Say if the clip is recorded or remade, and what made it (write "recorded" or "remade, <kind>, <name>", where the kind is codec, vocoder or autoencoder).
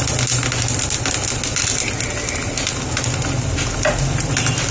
recorded